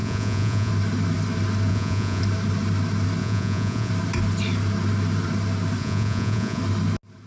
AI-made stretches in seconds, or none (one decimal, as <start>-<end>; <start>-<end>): 0.0-0.7; 1.7-2.2; 3.2-3.9; 5.8-6.6